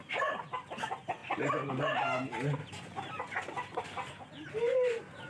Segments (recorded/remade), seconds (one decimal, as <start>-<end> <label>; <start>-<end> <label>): 0.0-5.3 recorded